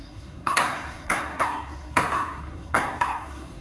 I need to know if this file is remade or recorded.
remade